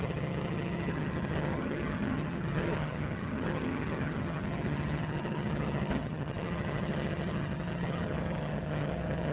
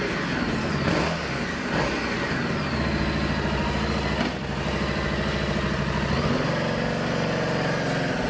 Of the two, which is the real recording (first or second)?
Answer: second